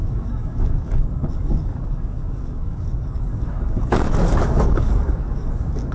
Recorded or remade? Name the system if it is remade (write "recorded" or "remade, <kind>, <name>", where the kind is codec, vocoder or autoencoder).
remade, codec, DAC